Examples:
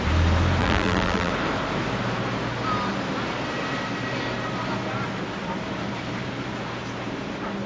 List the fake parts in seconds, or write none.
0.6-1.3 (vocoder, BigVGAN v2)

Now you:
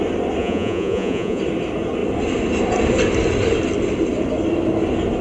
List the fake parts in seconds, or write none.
0.4-1.4 (vocoder, Vocos)

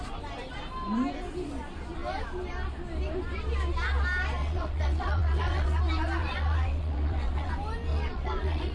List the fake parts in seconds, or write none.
4.4-5.8 (vocoder, WaveNeXt); 6.2-7.5; 7.9-8.7

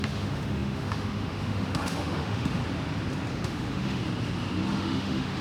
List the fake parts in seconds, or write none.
0.0-2.6 (autoencoder, DAC-VAE); 3.3-4.0; 4.8-5.4